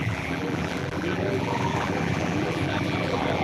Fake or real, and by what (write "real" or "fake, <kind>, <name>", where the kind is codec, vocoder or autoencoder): fake, vocoder, BigVGAN v2